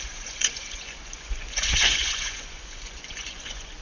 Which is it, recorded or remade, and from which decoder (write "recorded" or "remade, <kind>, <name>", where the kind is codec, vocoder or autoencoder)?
remade, vocoder, Vocos